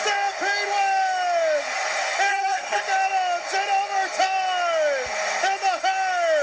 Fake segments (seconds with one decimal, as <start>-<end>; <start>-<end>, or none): 2.3-2.8